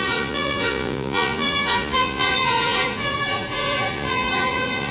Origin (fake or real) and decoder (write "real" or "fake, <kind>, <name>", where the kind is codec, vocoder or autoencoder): fake, vocoder, Vocos